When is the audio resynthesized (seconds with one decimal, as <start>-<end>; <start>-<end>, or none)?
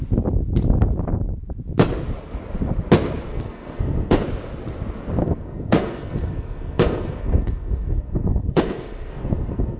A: 3.3-4.2; 5.2-9.8